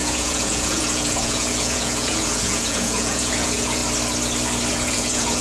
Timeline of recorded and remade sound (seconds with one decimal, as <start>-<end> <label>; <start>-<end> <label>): 0.0-3.8 remade; 3.8-4.7 recorded; 4.7-5.4 remade